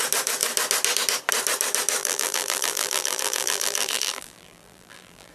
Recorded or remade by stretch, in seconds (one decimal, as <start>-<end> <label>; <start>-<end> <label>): 0.0-2.0 recorded; 2.0-5.3 remade